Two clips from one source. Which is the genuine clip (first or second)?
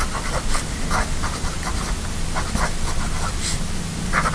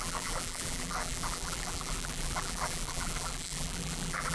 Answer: first